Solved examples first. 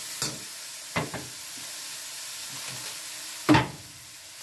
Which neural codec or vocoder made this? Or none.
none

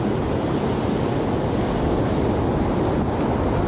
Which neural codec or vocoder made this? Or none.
none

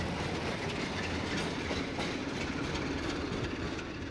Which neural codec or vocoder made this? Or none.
none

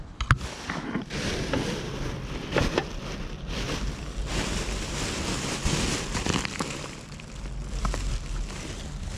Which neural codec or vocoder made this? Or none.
vocoder, BigVGAN v2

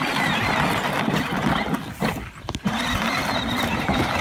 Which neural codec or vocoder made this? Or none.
none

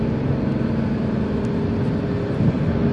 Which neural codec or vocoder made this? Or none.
none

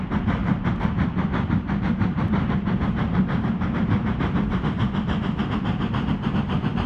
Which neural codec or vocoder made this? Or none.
vocoder, BigVGAN v2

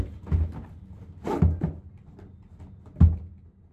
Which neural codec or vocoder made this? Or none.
none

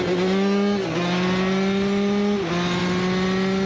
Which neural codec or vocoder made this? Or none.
none